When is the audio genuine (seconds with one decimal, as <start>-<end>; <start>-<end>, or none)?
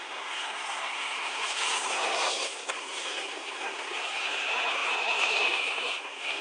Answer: none